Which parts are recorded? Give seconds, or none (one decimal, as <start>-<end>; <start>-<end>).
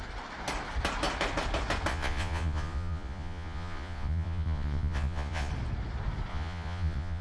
0.0-1.9; 5.5-6.3